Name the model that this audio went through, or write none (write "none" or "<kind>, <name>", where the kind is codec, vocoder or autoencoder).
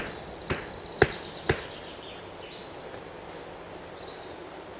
none